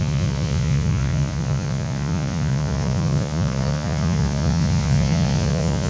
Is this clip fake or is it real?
fake